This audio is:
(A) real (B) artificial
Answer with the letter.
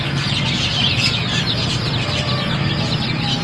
A